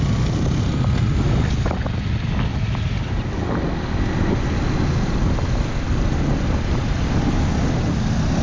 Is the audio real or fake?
real